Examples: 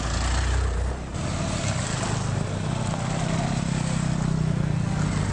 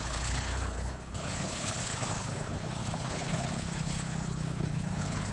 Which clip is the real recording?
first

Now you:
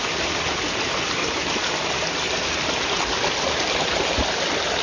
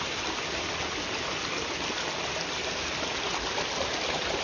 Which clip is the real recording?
first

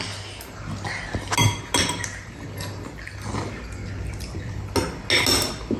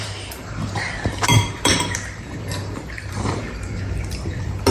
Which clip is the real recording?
first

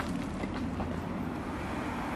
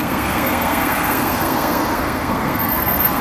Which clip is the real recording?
first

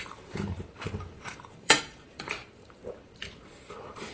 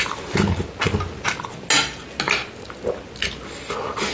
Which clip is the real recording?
second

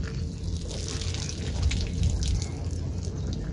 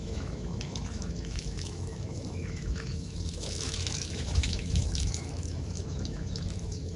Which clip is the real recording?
first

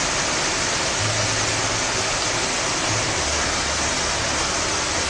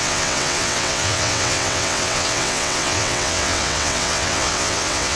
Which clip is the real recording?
first